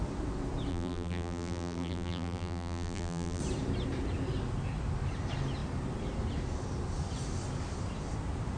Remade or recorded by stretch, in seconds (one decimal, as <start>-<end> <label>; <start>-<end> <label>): 0.0-0.7 recorded; 0.7-3.4 remade; 3.4-8.6 recorded